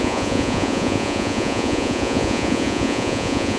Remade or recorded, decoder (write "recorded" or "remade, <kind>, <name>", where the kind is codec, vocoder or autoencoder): remade, vocoder, Vocos